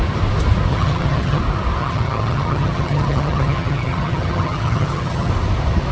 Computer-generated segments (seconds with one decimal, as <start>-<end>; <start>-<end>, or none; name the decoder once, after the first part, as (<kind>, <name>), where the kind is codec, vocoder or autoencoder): 0.7-1.4 (vocoder, HiFi-GAN); 1.8-5.3